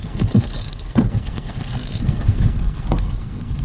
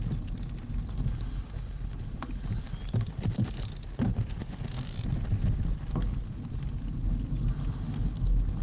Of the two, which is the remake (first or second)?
first